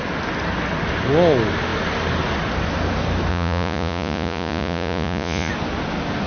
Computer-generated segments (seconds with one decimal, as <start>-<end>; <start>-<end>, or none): 3.3-5.5